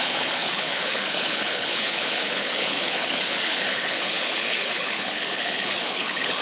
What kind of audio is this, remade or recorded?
remade